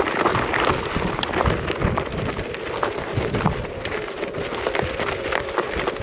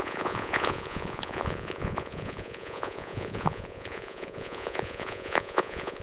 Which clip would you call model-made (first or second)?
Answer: second